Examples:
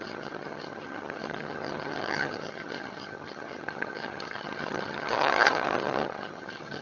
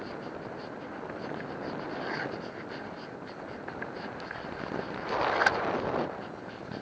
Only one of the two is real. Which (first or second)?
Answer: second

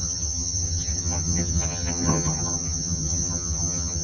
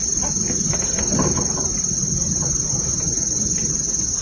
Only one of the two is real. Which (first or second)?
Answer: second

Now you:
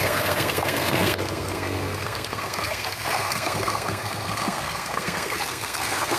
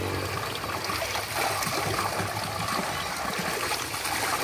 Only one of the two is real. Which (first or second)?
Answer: second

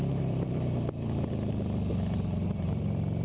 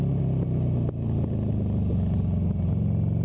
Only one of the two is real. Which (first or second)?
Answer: second